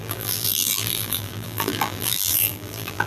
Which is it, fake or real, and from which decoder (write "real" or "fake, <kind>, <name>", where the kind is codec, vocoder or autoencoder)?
fake, vocoder, BigVGAN v2